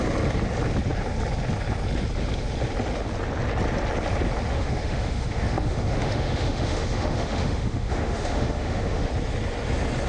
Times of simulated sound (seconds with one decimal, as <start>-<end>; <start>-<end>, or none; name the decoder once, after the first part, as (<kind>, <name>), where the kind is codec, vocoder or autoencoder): 4.5-9.1 (autoencoder, DAC-VAE)